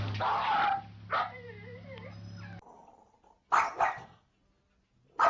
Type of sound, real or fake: real